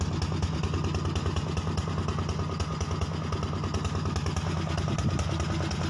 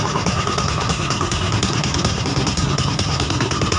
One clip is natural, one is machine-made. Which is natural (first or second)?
first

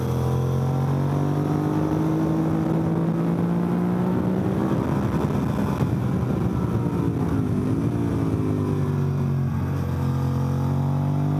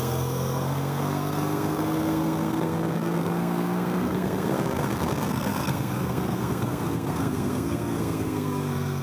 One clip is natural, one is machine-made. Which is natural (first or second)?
first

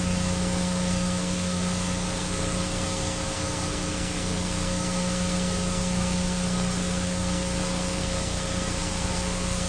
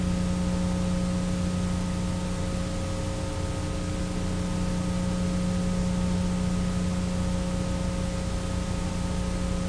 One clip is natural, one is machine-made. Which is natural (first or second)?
second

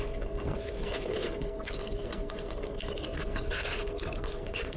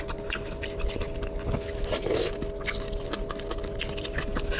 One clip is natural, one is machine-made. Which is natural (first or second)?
second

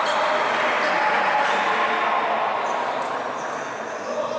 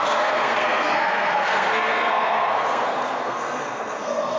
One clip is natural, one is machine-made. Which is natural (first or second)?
first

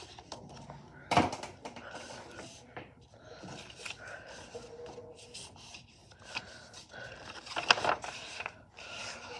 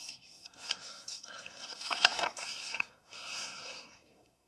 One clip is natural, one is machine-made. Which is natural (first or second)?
first